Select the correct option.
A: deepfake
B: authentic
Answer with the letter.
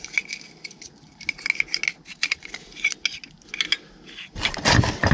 B